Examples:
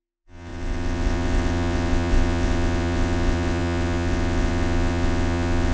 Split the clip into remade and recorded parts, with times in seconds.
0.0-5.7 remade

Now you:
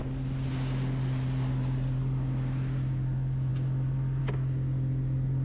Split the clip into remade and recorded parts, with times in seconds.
0.0-5.4 recorded

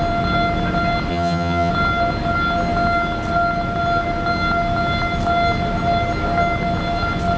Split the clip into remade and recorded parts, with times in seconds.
0.0-1.1 recorded; 1.1-1.7 remade; 1.7-7.4 recorded